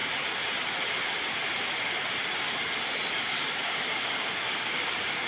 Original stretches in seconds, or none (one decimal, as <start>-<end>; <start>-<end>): 0.0-3.2